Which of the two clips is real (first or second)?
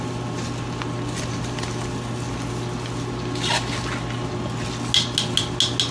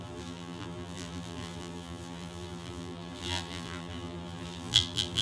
first